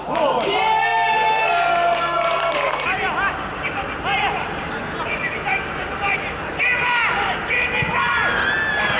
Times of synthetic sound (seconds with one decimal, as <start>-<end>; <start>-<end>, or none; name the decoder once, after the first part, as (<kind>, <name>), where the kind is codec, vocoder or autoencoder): none